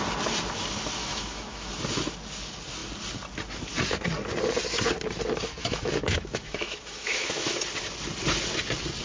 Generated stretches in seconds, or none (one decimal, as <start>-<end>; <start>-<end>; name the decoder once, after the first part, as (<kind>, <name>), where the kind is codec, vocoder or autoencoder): 1.0-1.7 (autoencoder, DAC-VAE); 5.6-7.6